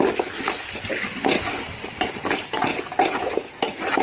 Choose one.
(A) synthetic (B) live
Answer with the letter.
B